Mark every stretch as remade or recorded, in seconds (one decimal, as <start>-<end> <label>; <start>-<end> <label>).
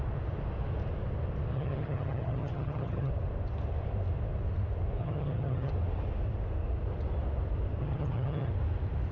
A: 0.0-1.5 recorded; 1.5-3.1 remade; 3.1-5.0 recorded; 5.0-5.7 remade; 5.7-7.8 recorded; 7.8-8.5 remade; 8.5-9.1 recorded